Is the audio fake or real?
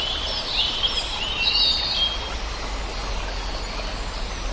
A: real